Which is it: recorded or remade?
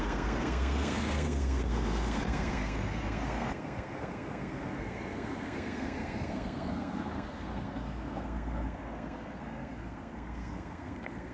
remade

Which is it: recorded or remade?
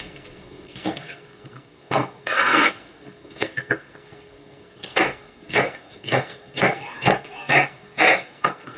remade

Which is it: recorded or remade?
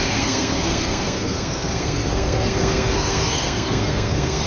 remade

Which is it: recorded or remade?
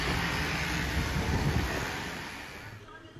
recorded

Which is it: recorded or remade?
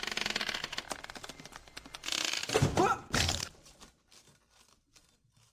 recorded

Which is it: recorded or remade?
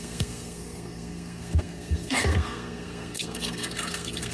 remade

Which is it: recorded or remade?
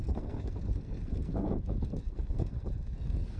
remade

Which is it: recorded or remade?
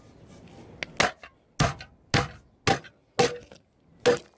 recorded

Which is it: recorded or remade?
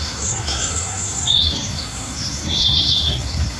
remade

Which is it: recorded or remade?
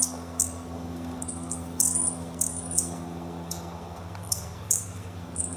remade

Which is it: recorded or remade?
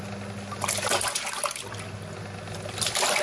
recorded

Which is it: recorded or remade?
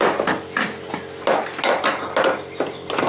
recorded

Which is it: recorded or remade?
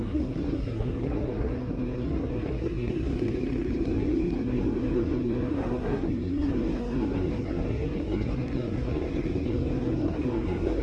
remade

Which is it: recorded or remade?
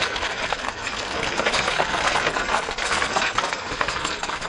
remade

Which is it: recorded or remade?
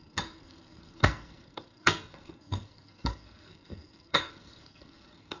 remade